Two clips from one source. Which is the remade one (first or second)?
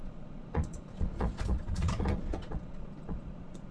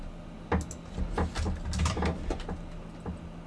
first